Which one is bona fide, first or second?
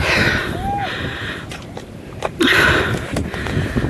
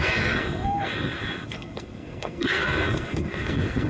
first